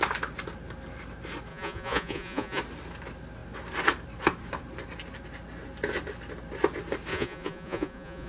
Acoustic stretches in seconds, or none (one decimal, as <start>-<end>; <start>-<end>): 0.0-1.5; 2.6-7.1